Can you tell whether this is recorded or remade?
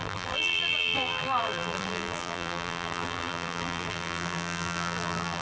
remade